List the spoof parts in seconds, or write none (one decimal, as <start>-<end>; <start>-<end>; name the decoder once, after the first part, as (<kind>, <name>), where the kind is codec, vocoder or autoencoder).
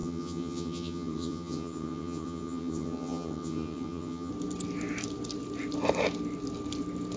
0.0-4.3 (vocoder, HiFi-GAN)